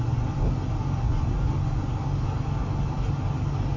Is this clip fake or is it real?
real